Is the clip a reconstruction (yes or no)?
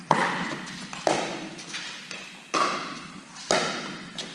no